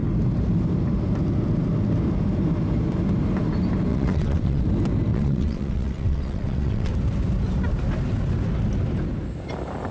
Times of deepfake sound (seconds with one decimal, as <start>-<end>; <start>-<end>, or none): 3.9-4.6; 5.1-6.9